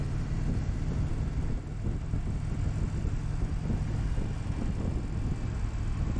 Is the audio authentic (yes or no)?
yes